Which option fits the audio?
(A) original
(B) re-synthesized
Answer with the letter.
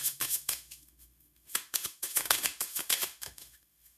B